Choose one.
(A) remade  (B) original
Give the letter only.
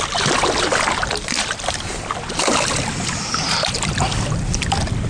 B